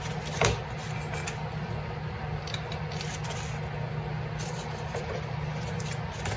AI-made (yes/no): no